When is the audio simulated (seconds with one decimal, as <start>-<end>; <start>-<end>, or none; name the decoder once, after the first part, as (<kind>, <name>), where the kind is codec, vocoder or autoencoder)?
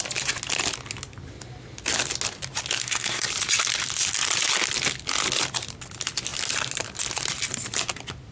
2.8-3.3 (codec, SNAC)